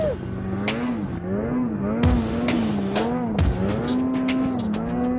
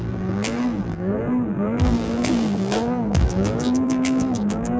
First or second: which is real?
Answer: first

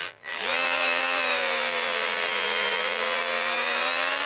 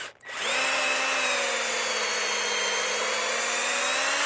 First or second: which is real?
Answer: second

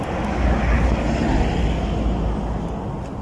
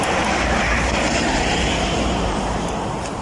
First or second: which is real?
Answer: first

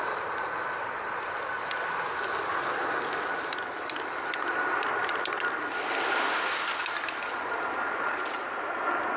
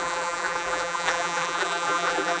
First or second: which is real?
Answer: first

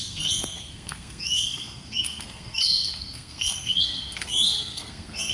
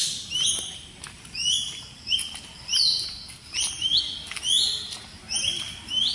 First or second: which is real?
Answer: second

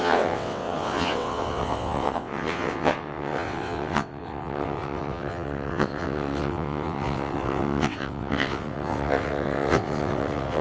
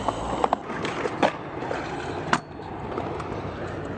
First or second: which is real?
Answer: second